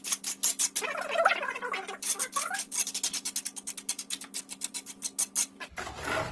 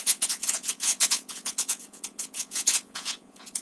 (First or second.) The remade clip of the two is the second